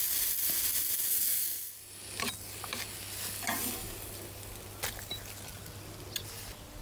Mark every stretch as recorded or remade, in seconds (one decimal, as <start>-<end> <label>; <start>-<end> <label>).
0.0-1.1 recorded; 1.1-1.7 remade; 1.7-6.8 recorded